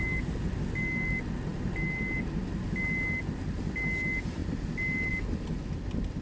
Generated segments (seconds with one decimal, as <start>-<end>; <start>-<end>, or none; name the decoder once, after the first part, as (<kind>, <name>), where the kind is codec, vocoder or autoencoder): none